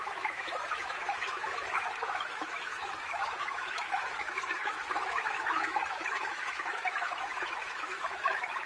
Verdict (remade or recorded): remade